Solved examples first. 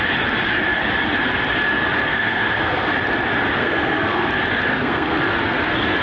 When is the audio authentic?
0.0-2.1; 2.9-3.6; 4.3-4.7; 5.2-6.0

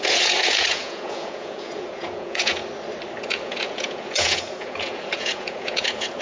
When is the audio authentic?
2.6-3.2

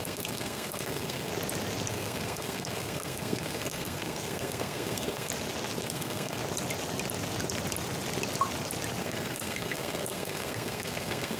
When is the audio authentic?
1.3-1.9; 5.3-5.8; 6.4-9.0

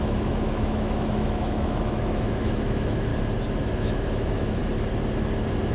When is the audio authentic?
3.1-3.7; 4.6-5.7

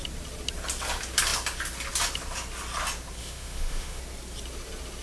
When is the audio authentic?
0.0-3.2; 4.0-5.0

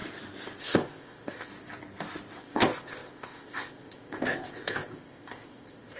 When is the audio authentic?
0.0-0.6; 1.5-2.4